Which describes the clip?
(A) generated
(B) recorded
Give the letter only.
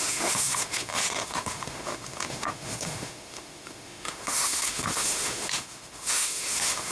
A